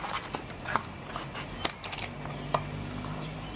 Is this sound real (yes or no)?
yes